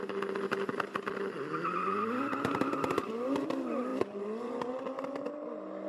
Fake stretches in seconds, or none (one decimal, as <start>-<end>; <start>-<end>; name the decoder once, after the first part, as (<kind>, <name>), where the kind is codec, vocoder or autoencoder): 3.9-4.8 (vocoder, BigVGAN v2)